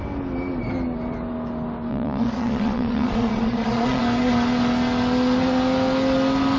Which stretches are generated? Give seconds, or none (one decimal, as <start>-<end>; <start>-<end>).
1.9-4.0